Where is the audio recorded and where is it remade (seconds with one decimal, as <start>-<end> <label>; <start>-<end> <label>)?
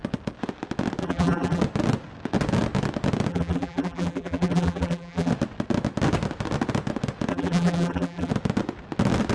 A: 0.0-1.0 recorded; 1.0-1.6 remade; 1.6-3.3 recorded; 3.3-5.3 remade; 5.3-7.3 recorded; 7.3-8.3 remade; 8.3-9.3 recorded